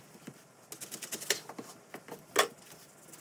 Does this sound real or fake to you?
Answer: real